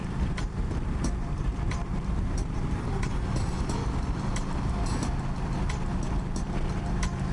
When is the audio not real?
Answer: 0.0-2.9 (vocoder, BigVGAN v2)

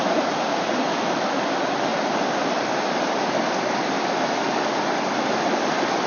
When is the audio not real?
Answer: 0.9-1.4 (autoencoder, DAC-VAE)

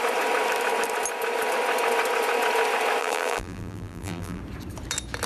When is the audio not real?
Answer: 3.0-4.4 (vocoder, BigVGAN v2)